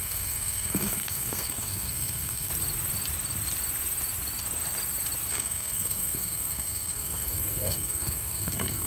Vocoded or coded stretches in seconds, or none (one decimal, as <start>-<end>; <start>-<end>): 0.0-2.5; 5.3-8.9